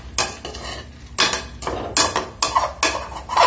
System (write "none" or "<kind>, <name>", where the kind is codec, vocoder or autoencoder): none